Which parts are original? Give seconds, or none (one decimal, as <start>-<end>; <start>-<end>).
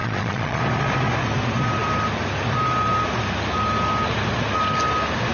0.6-5.3